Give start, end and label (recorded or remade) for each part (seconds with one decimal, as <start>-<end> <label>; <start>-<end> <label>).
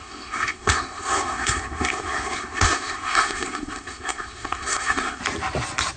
0.0-5.2 remade; 5.2-6.0 recorded